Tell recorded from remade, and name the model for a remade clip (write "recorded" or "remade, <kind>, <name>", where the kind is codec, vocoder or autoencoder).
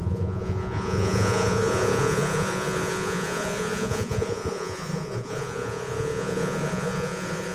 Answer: remade, vocoder, Vocos